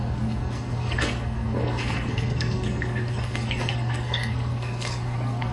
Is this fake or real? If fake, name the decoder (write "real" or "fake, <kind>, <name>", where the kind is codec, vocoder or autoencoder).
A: fake, codec, SNAC